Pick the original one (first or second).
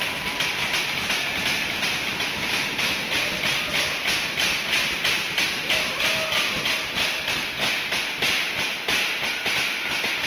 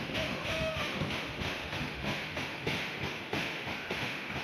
first